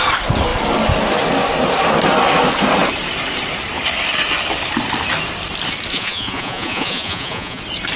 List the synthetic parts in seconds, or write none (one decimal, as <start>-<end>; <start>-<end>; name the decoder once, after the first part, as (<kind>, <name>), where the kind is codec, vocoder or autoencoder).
5.9-7.6 (vocoder, Vocos)